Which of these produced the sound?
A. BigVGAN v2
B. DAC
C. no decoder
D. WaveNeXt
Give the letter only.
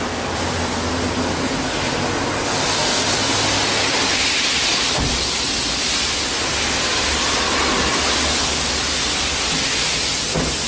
C